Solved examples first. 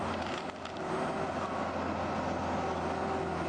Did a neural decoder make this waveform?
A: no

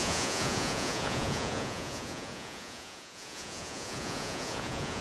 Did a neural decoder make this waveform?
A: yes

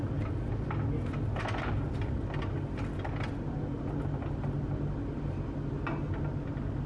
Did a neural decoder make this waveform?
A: no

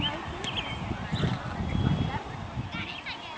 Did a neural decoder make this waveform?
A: no